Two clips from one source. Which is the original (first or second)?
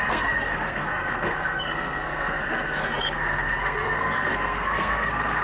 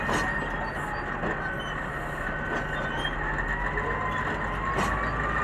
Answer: second